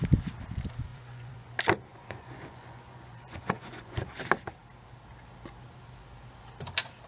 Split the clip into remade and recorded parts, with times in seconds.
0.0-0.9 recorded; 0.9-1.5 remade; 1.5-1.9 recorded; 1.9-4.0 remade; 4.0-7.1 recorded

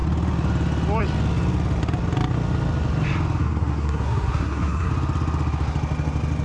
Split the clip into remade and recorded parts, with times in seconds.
0.0-3.4 recorded; 3.4-4.9 remade; 4.9-6.4 recorded

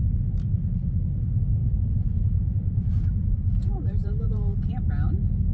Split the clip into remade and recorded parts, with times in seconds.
0.0-1.6 recorded; 1.6-4.9 remade; 4.9-5.5 recorded

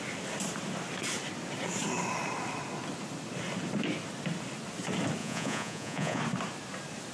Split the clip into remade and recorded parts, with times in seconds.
0.0-5.2 recorded; 5.2-6.2 remade; 6.2-7.1 recorded